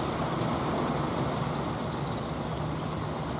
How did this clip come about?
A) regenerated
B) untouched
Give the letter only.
B